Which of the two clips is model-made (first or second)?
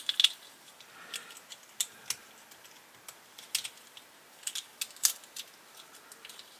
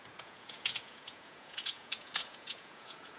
second